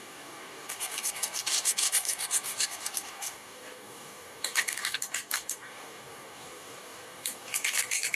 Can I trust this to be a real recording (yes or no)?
no